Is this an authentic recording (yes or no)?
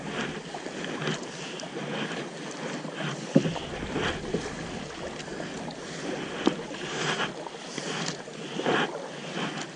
yes